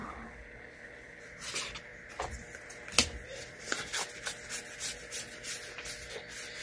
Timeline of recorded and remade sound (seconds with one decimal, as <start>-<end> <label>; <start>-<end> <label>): 0.0-1.2 remade; 1.2-6.6 recorded